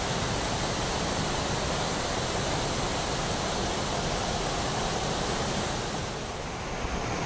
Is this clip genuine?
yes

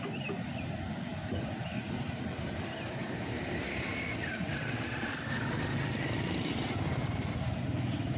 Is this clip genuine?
no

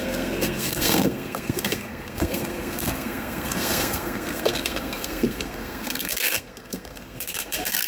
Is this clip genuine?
no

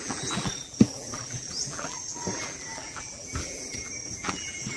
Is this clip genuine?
no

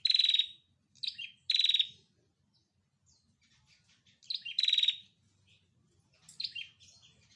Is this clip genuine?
yes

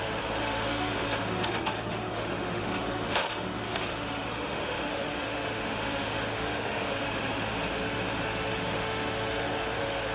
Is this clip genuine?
no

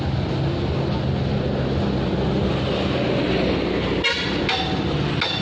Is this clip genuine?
yes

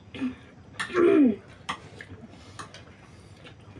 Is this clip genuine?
yes